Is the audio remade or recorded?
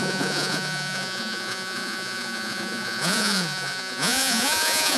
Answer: remade